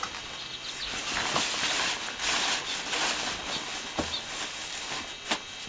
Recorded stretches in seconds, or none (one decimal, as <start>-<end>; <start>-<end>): 0.0-5.7